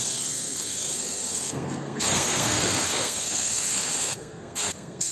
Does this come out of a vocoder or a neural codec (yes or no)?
yes